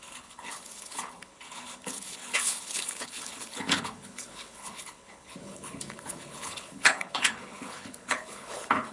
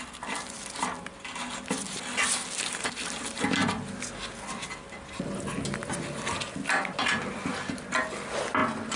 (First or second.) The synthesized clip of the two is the first